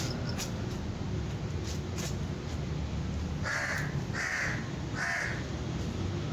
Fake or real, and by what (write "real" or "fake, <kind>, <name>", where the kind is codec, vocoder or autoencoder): real